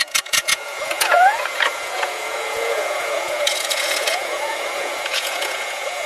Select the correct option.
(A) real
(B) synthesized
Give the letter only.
B